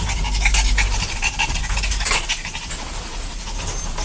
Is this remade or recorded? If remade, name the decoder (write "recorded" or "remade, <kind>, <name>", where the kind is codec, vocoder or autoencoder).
recorded